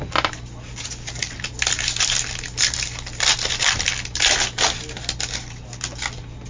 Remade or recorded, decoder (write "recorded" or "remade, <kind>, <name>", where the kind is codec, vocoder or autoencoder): recorded